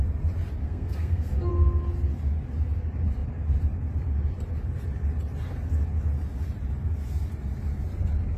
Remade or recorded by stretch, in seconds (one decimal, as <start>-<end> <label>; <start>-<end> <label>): 0.0-0.6 recorded; 0.6-1.5 remade; 1.5-8.4 recorded

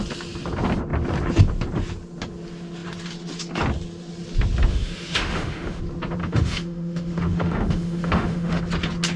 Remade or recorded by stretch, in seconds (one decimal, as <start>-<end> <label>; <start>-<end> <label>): 0.0-4.7 recorded; 4.7-5.8 remade; 5.8-6.2 recorded; 6.2-8.6 remade; 8.6-9.2 recorded

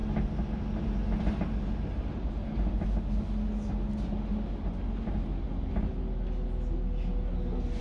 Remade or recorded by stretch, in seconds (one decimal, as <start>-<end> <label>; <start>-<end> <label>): 0.0-7.8 recorded

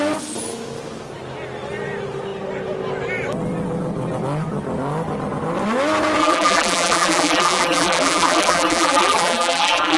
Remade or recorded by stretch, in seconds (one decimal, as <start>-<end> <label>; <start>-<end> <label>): 0.0-6.2 recorded; 6.2-10.0 remade

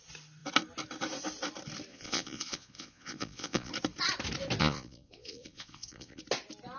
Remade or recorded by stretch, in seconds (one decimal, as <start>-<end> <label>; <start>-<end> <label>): 0.0-1.9 recorded; 1.9-3.7 remade; 3.7-4.6 recorded; 4.6-6.2 remade; 6.2-6.8 recorded

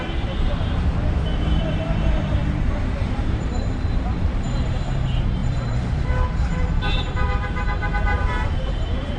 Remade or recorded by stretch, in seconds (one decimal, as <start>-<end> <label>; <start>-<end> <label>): 0.0-2.4 remade; 2.4-3.0 recorded; 3.0-9.2 remade

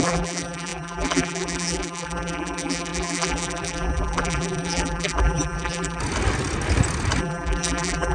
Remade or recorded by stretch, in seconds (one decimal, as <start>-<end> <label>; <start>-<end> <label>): 0.0-6.0 remade; 6.0-7.2 recorded; 7.2-8.1 remade